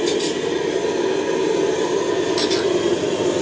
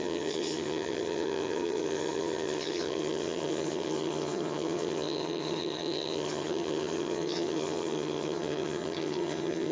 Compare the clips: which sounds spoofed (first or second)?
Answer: second